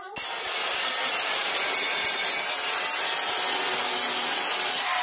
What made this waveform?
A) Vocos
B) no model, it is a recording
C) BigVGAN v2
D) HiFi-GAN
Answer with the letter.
B